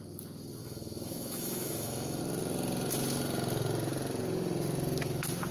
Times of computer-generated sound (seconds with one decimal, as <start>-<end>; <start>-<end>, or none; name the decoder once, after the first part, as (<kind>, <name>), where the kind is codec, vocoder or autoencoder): 0.6-2.2 (autoencoder, DAC-VAE)